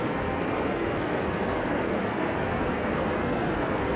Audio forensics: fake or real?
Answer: fake